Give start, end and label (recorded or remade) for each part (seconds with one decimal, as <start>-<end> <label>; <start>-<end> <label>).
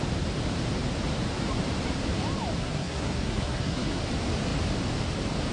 0.0-2.6 recorded; 2.6-4.0 remade; 4.0-5.5 recorded